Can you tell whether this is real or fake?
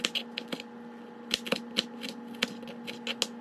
real